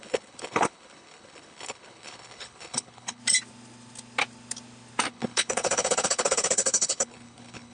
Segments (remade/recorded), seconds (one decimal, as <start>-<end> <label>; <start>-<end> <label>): 0.0-3.2 remade; 3.2-5.1 recorded; 5.1-7.7 remade